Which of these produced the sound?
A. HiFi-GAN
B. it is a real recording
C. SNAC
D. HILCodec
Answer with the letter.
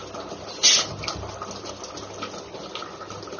B